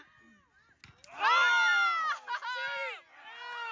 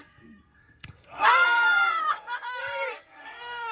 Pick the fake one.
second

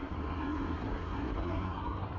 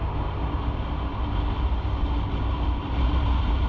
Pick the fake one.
first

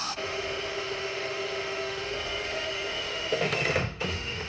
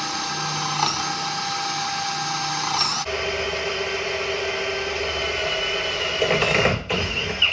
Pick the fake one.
first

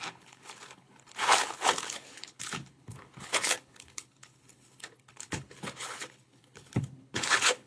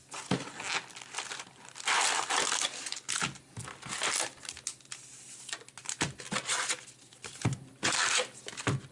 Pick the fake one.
first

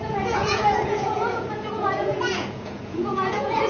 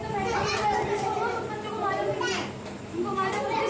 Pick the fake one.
first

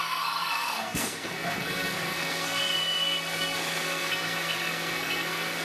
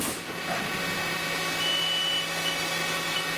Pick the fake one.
first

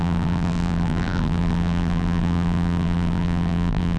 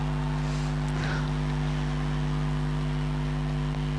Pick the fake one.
first